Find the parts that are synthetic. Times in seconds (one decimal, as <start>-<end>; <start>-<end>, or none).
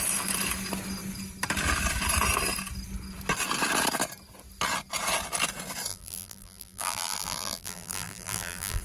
5.9-8.8